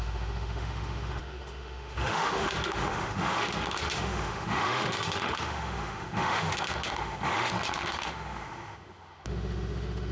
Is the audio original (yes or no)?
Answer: no